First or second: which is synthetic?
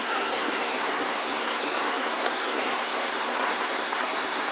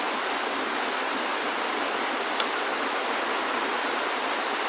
first